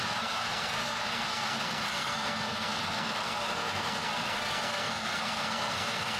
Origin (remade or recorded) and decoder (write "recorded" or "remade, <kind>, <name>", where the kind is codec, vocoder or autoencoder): remade, codec, SNAC